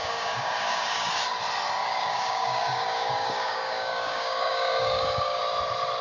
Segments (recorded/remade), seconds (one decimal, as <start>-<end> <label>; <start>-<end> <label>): 0.0-1.1 remade; 1.1-1.8 recorded; 1.8-5.4 remade; 5.4-6.0 recorded